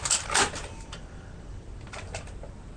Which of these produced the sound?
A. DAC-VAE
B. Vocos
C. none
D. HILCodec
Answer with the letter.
C